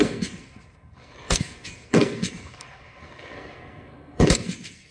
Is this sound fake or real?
fake